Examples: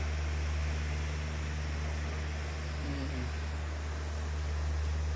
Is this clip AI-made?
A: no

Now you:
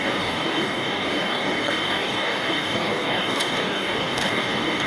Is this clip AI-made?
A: yes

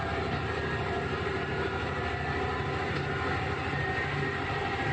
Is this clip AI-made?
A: no